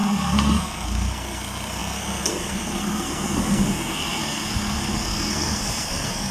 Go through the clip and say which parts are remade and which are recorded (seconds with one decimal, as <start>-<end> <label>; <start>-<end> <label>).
0.0-6.3 remade